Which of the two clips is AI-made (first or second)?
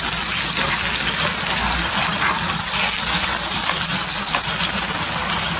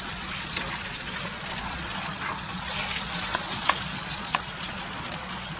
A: second